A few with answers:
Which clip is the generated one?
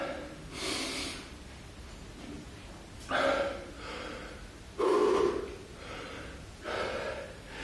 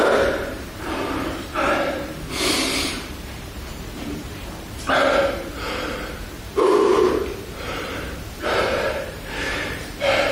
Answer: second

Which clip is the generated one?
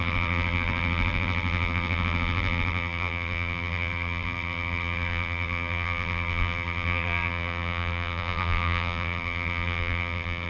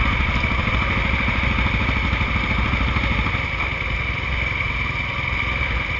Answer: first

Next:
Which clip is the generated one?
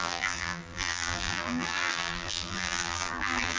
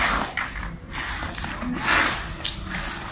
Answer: first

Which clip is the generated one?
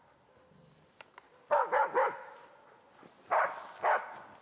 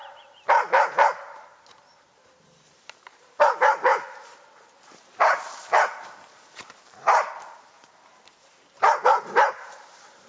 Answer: second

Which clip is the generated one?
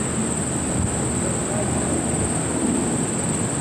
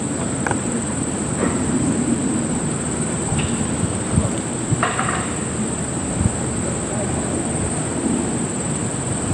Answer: second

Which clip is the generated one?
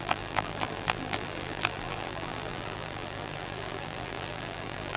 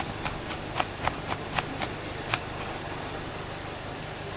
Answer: first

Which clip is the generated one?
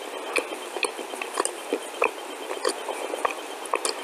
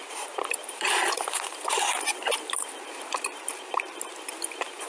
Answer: second